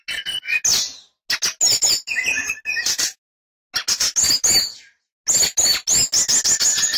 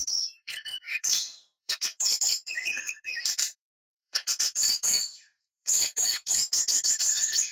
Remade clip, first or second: second